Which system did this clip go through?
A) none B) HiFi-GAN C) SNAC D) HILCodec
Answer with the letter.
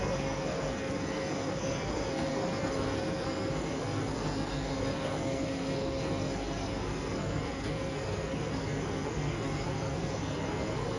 C